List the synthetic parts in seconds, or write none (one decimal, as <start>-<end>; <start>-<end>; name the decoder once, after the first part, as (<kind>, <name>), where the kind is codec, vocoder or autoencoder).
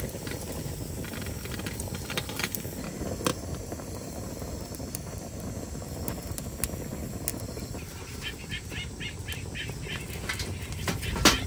3.3-5.5 (vocoder, BigVGAN v2); 7.3-9.3